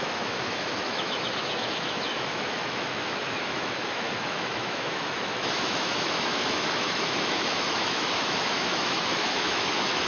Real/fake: fake